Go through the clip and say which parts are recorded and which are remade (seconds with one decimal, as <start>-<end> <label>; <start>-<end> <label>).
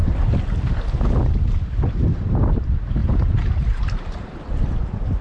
0.0-3.0 recorded; 3.0-4.4 remade; 4.4-5.2 recorded